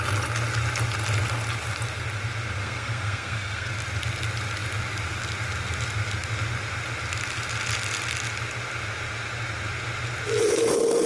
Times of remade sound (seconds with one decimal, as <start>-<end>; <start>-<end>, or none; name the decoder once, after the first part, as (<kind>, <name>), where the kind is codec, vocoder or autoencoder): 2.6-3.7 (codec, SNAC)